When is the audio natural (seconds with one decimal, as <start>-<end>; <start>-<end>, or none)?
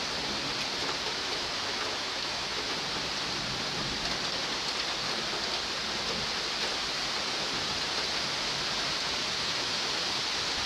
0.0-1.2; 2.7-9.2; 10.2-10.7